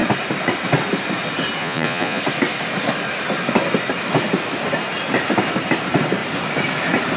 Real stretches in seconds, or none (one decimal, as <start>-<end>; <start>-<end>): 0.0-1.6; 2.2-7.2